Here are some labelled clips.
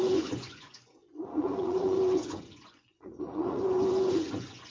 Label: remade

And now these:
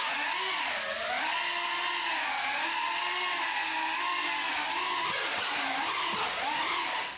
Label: recorded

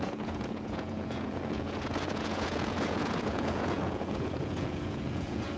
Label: remade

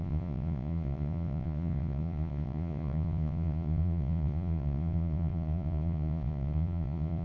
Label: remade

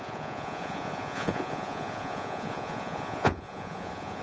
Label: remade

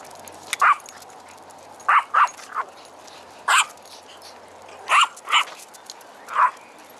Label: recorded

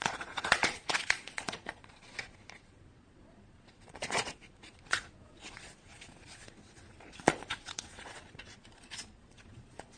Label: remade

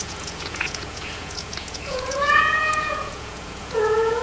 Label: remade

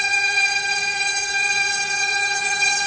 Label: remade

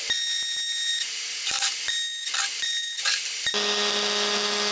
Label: recorded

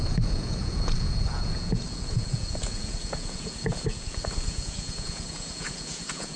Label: remade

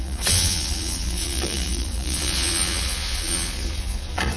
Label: remade